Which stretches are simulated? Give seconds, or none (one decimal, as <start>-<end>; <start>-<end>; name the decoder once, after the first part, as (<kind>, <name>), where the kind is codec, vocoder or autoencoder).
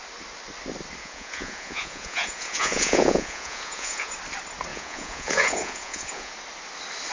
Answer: 1.0-4.1 (vocoder, Vocos); 4.7-6.3